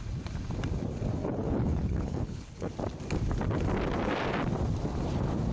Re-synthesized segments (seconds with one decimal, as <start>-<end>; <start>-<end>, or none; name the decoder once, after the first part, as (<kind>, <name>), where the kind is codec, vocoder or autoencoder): 1.2-2.7 (codec, HILCodec)